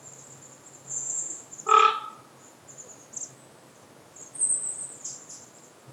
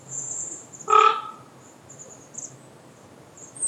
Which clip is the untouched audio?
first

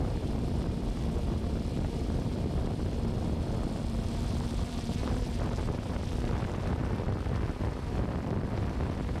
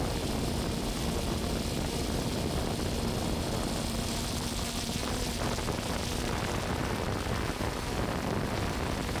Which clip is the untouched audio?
second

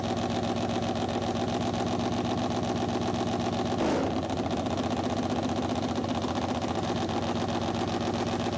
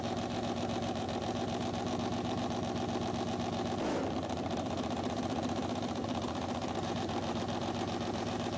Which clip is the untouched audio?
first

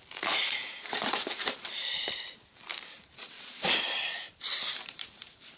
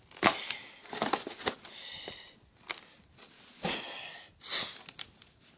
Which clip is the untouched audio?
second